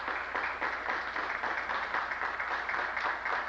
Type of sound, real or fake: real